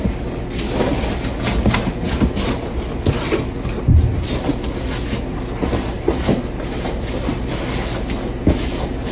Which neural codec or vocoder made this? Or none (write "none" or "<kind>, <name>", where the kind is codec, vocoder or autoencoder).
none